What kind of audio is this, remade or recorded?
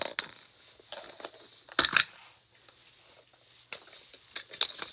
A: recorded